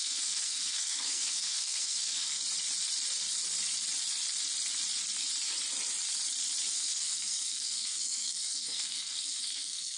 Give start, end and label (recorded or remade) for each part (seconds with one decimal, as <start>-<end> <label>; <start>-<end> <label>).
0.0-2.4 remade; 2.4-6.7 recorded; 6.7-10.0 remade